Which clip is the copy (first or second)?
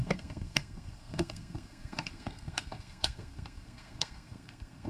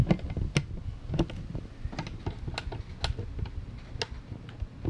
first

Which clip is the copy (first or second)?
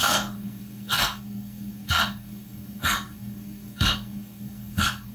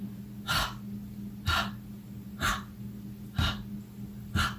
first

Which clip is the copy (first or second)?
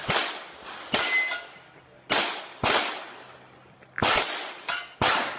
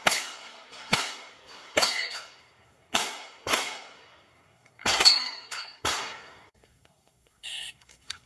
second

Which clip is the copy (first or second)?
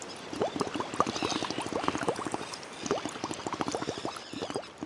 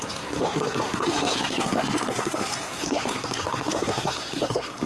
second